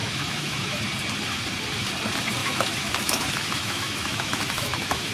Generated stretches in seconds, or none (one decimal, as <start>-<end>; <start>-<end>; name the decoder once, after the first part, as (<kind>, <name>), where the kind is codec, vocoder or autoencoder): 0.0-0.8 (autoencoder, DAC-VAE); 2.4-5.1